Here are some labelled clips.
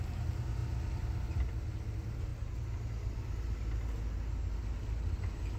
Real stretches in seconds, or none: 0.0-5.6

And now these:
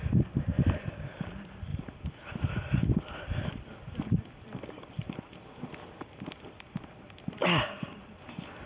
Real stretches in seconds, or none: 0.0-1.7; 6.9-8.7